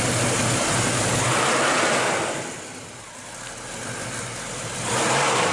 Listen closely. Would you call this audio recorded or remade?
recorded